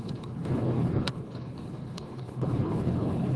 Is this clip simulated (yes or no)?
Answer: yes